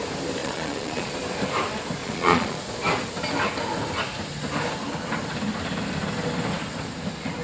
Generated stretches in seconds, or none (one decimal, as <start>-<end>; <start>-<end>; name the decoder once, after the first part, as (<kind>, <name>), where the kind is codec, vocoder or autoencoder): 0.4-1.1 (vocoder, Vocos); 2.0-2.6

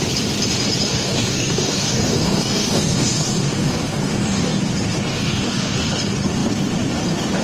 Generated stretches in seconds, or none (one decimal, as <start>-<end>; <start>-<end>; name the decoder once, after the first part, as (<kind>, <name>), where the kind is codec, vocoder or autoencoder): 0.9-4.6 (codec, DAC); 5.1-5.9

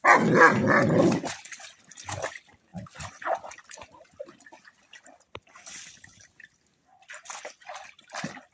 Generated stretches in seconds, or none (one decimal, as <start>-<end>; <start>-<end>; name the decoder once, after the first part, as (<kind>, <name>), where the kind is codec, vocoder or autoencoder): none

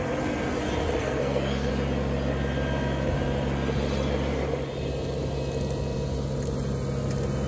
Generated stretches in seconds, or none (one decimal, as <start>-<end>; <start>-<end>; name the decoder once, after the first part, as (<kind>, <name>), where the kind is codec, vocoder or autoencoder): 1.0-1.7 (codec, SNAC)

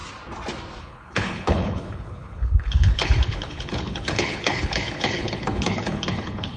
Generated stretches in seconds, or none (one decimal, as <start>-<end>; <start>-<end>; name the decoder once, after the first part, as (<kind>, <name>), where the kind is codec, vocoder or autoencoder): 0.8-6.6 (codec, HILCodec)

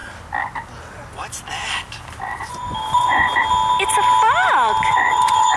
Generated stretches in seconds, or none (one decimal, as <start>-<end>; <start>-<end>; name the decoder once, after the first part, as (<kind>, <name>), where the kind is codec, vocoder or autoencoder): 2.4-3.3 (vocoder, Vocos); 4.9-5.6

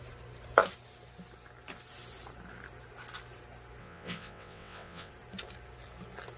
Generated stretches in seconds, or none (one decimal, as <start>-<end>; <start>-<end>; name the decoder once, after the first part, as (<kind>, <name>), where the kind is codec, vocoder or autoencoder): 3.8-5.1 (vocoder, WaveNeXt)

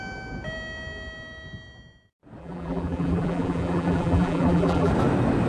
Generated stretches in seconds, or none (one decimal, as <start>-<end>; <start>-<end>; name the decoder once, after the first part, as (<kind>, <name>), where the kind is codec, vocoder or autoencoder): 2.4-4.9 (vocoder, BigVGAN v2)